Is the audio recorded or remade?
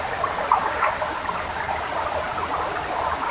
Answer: recorded